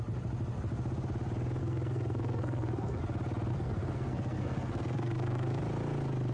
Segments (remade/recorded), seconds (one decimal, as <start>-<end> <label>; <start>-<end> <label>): 0.0-1.6 recorded; 1.6-3.0 remade; 3.0-3.5 recorded; 3.5-5.6 remade; 5.6-6.3 recorded